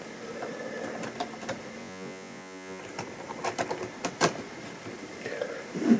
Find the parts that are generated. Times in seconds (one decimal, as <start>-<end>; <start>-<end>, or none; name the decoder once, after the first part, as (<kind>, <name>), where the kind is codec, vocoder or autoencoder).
1.8-2.8 (vocoder, Vocos)